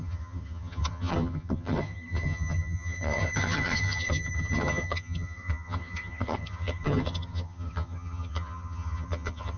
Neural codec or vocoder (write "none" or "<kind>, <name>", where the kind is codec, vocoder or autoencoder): vocoder, HiFi-GAN